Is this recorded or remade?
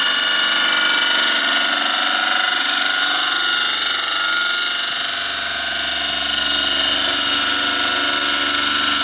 recorded